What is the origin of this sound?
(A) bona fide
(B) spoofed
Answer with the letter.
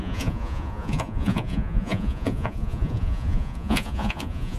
B